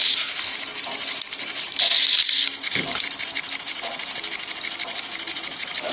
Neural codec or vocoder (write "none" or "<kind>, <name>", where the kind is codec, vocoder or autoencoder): none